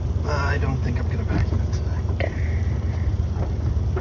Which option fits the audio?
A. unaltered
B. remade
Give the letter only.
B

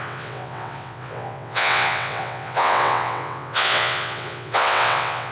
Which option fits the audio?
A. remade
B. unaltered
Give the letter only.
A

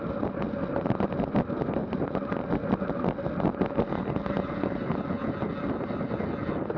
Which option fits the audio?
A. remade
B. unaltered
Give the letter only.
B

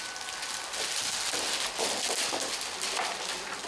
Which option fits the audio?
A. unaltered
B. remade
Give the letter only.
A